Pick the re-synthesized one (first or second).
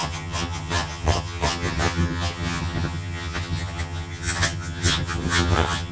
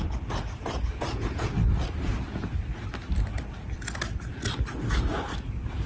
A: first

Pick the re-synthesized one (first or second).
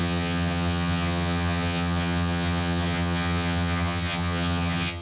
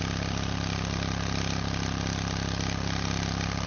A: first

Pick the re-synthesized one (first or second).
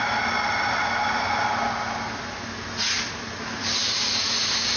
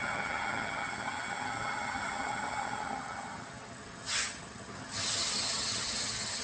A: second